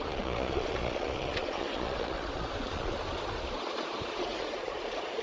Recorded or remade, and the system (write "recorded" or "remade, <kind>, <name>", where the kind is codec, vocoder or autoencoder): remade, vocoder, Vocos